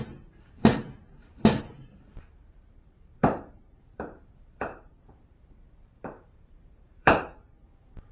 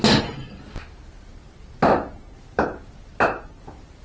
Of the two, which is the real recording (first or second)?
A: second